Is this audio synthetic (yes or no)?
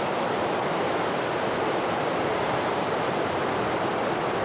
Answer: no